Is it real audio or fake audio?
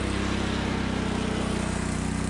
real